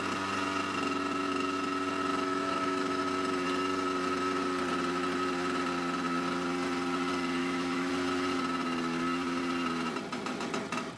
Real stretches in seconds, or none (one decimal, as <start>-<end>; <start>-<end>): 0.0-2.1; 3.0-7.4; 7.9-11.0